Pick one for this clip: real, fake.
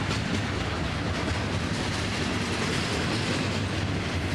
real